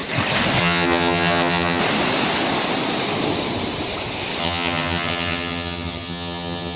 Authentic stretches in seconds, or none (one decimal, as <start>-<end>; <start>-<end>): 0.0-0.6; 1.8-4.4